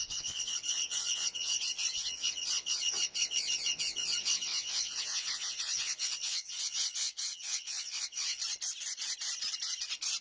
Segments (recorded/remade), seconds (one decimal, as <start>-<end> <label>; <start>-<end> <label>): 0.0-8.4 remade; 8.4-10.2 recorded